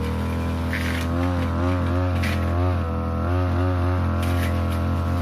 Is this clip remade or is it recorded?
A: recorded